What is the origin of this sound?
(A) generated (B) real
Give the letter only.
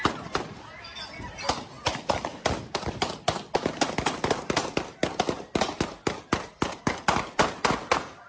B